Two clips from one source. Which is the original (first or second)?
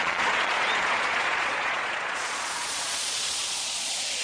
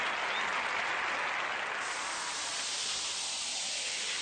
second